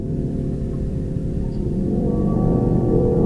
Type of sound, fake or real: fake